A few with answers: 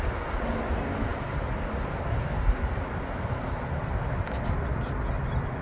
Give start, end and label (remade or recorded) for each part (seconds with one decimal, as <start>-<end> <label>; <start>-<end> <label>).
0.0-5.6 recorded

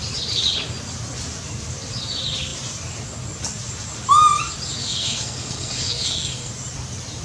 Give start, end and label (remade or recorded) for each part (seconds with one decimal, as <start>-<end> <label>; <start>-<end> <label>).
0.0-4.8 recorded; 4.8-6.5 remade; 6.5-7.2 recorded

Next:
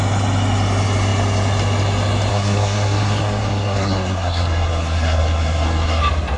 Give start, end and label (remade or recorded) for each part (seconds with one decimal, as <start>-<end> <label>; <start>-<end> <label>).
0.0-2.3 recorded; 2.3-6.0 remade; 6.0-6.4 recorded